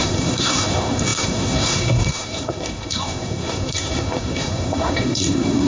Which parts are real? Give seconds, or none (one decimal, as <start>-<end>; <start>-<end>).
none